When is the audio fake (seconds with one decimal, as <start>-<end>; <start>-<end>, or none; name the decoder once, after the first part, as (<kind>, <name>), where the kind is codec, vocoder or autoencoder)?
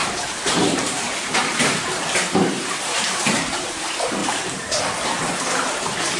0.0-3.7 (vocoder, BigVGAN v2); 4.2-4.8